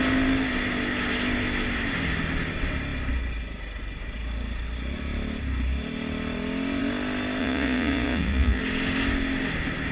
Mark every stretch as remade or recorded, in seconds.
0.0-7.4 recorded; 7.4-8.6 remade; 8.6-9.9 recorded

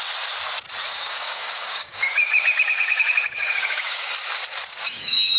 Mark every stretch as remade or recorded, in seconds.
0.0-0.9 recorded; 0.9-4.1 remade; 4.1-4.7 recorded; 4.7-5.4 remade

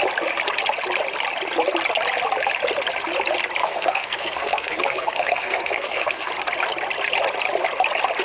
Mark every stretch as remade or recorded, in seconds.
0.0-3.6 recorded; 3.6-6.3 remade; 6.3-8.2 recorded

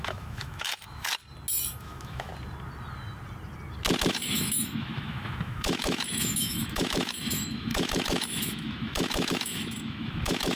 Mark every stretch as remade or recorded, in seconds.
0.0-1.1 remade; 1.1-1.8 recorded; 1.8-2.3 remade; 2.3-4.1 recorded; 4.1-10.6 remade

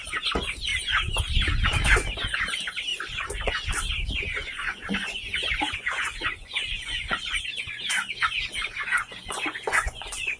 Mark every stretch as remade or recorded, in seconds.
0.0-2.9 recorded; 2.9-3.5 remade; 3.5-4.4 recorded; 4.4-7.8 remade; 7.8-8.9 recorded; 8.9-10.4 remade